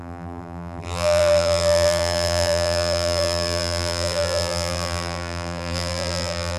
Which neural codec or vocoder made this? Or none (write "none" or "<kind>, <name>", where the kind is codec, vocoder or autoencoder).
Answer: vocoder, BigVGAN v2